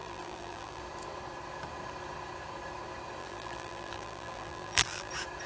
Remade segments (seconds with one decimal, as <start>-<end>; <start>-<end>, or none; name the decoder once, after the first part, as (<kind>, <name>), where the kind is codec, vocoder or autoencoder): 0.0-0.8 (vocoder, BigVGAN v2); 3.2-5.1